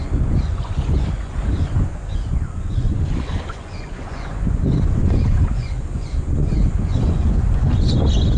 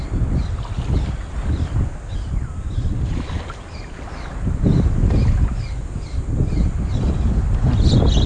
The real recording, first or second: second